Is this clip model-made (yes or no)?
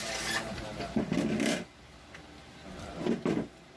no